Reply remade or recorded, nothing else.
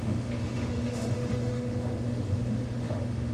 remade